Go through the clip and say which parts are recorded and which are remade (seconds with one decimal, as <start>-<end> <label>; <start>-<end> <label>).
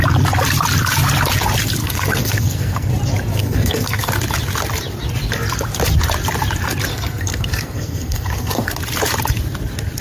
0.0-1.8 recorded; 1.8-2.9 remade; 2.9-3.4 recorded; 3.4-4.1 remade; 4.1-6.9 recorded; 6.9-8.7 remade; 8.7-10.0 recorded